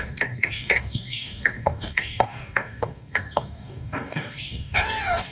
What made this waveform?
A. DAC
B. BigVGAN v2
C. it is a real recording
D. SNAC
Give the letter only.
A